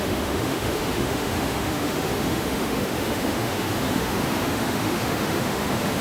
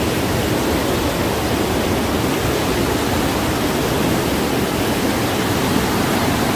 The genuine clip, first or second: second